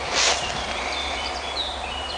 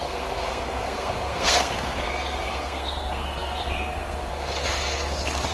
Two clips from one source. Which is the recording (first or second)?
first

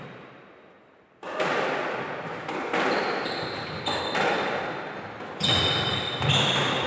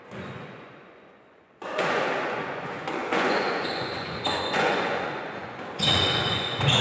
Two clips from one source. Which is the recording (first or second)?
first